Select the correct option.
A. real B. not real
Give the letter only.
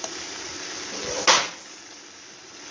A